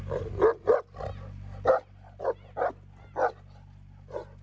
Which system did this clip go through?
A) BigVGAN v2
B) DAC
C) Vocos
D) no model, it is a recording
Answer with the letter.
D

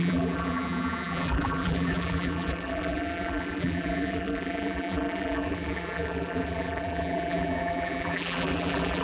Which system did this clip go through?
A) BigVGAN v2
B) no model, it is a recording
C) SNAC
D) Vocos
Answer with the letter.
A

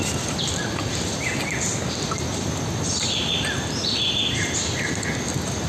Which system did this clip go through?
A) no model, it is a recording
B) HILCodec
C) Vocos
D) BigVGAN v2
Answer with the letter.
A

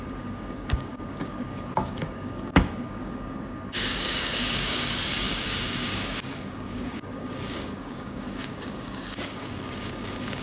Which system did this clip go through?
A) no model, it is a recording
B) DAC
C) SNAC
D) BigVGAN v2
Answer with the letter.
B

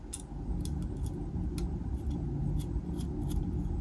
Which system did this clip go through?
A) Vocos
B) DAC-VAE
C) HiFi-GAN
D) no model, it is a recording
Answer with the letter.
D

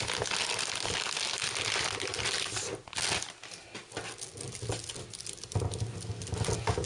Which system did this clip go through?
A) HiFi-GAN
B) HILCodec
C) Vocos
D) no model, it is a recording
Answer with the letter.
D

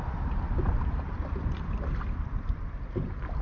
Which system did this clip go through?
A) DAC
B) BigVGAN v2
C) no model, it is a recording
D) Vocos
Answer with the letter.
C